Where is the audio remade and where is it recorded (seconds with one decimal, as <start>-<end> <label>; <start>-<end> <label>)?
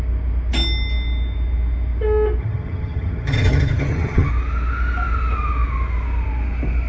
0.0-2.4 recorded; 2.4-4.3 remade; 4.3-6.9 recorded